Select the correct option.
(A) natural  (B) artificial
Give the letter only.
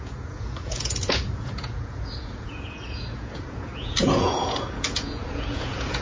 B